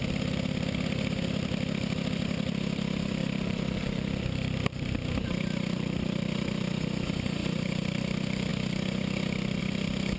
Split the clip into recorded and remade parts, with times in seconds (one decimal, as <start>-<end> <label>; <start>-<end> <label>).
0.0-3.2 recorded; 3.2-6.7 remade; 6.7-7.4 recorded; 7.4-8.0 remade; 8.0-10.2 recorded